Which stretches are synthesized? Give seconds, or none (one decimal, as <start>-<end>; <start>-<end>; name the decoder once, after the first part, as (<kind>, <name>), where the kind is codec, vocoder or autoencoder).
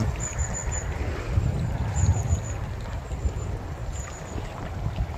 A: none